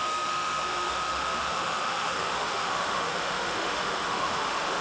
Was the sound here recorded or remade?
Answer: remade